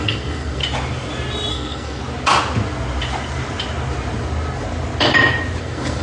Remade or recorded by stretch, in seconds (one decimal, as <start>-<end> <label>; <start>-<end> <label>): 0.0-0.6 remade; 0.6-1.5 recorded; 1.5-2.0 remade; 2.0-5.6 recorded; 5.6-6.0 remade